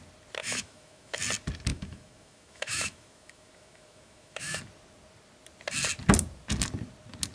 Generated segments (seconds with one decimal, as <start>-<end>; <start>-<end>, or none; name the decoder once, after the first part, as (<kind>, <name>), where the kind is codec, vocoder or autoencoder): 0.4-1.2 (autoencoder, DAC-VAE); 1.7-4.6